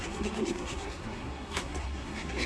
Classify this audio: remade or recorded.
remade